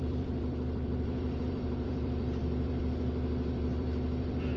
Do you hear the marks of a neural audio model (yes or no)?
yes